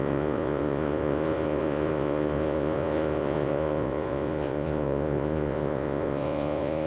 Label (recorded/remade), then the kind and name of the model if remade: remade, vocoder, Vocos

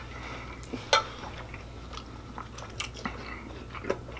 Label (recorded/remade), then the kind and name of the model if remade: recorded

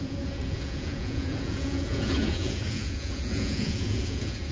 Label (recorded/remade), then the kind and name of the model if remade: remade, vocoder, Vocos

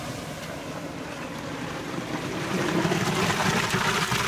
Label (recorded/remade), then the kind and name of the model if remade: recorded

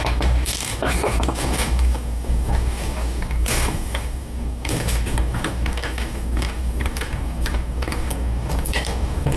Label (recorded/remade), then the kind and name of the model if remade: remade, codec, DAC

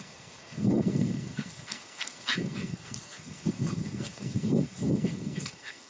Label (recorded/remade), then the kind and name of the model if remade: remade, codec, SNAC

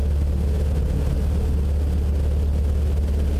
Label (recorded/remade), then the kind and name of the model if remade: recorded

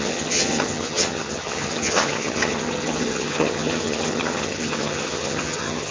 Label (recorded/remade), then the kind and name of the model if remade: remade, vocoder, HiFi-GAN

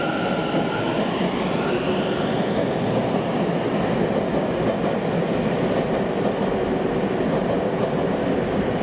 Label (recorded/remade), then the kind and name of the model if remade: recorded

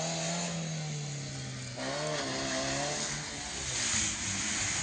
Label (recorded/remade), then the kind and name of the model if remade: recorded